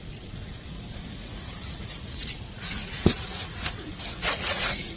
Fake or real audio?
fake